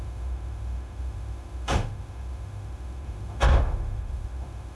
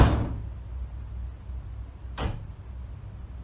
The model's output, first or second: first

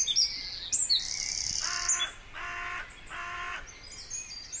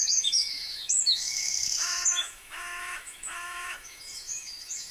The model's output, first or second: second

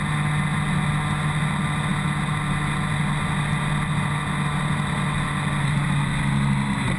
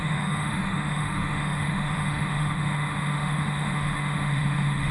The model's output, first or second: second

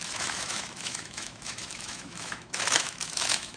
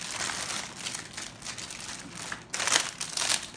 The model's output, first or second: first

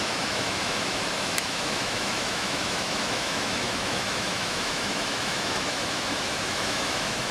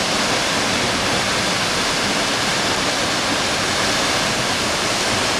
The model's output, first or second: first